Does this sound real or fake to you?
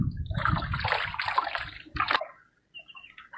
real